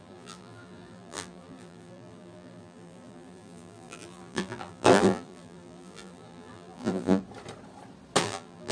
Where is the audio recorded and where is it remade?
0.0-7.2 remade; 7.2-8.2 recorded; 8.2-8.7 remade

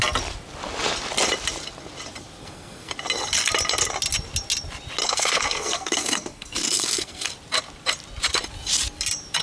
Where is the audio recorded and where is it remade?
0.0-2.4 recorded; 2.4-2.9 remade; 2.9-5.0 recorded; 5.0-7.3 remade; 7.3-9.4 recorded

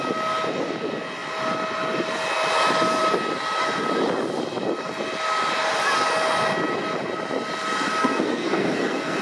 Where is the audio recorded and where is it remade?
0.0-8.0 recorded; 8.0-9.2 remade

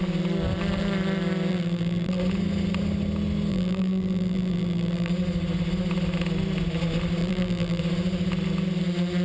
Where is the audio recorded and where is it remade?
0.0-1.5 recorded; 1.5-2.2 remade; 2.2-3.5 recorded; 3.5-5.1 remade; 5.1-7.2 recorded; 7.2-7.8 remade; 7.8-9.2 recorded

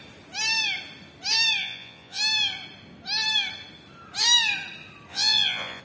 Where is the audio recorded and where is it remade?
0.0-1.6 recorded; 1.6-2.2 remade; 2.2-5.1 recorded; 5.1-5.8 remade

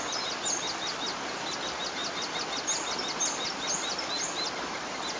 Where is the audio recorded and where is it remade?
0.0-5.2 recorded

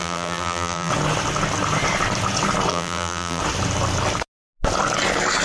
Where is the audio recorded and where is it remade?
0.0-0.9 remade; 0.9-2.7 recorded; 2.7-3.4 remade; 3.4-5.4 recorded

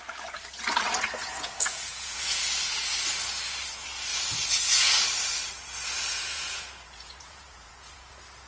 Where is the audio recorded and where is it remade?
0.0-1.2 recorded; 1.2-2.5 remade; 2.5-4.1 recorded; 4.1-4.9 remade; 4.9-6.1 recorded; 6.1-8.1 remade; 8.1-8.5 recorded